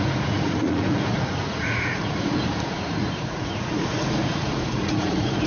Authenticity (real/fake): fake